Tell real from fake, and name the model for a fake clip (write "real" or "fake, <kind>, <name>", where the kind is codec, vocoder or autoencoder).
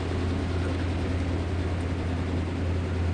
real